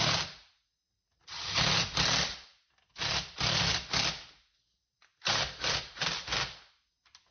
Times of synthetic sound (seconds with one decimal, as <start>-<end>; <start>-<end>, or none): none